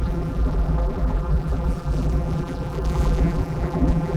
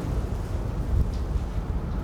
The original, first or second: second